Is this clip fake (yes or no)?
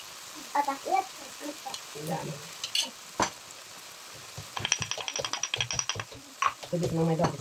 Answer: no